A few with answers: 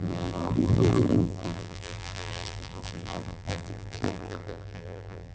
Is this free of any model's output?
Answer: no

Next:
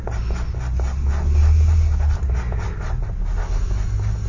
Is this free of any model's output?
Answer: yes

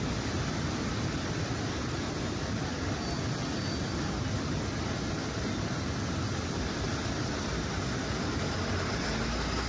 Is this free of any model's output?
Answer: yes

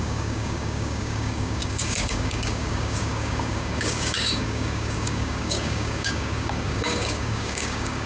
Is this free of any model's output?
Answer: no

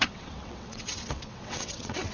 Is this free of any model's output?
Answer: no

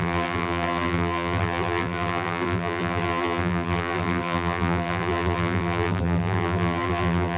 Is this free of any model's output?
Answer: no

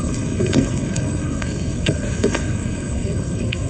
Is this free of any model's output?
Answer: no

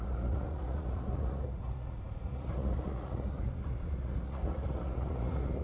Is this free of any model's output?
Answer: no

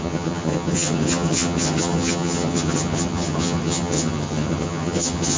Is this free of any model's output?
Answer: no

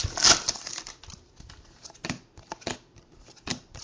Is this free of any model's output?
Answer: yes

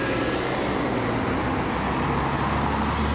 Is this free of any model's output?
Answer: yes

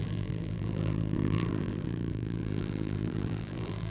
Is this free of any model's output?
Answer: no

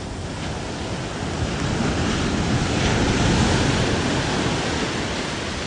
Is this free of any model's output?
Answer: yes